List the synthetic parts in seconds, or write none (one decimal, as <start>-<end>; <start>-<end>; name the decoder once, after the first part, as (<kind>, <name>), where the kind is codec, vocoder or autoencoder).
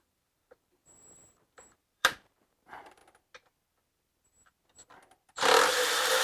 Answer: 0.0-3.0 (vocoder, BigVGAN v2); 5.7-6.2